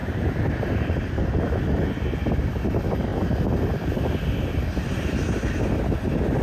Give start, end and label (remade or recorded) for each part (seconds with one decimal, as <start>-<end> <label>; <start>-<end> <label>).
0.0-6.4 recorded